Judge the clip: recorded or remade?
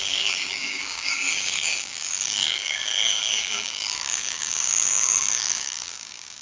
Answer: remade